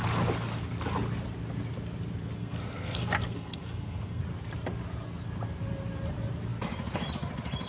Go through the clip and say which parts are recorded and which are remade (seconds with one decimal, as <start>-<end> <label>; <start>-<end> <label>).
0.0-2.4 recorded; 2.4-4.2 remade; 4.2-7.7 recorded